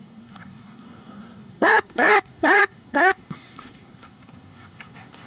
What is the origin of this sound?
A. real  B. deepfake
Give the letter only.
B